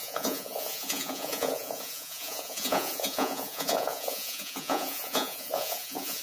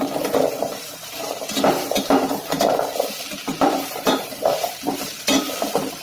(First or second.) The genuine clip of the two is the second